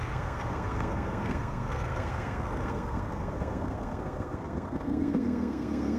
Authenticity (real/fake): fake